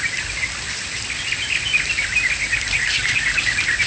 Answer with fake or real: real